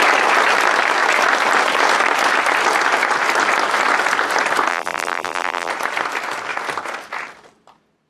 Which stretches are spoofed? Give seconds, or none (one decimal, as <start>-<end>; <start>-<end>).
4.7-5.7